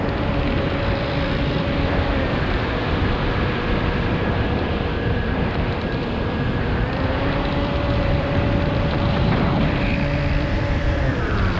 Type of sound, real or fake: fake